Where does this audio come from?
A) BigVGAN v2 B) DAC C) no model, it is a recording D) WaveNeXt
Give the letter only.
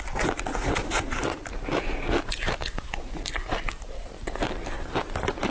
C